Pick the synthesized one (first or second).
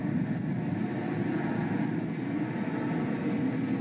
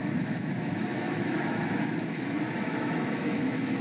second